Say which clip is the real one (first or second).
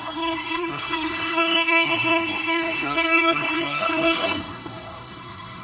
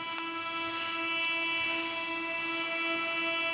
second